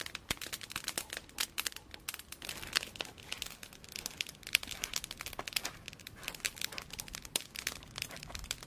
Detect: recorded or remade recorded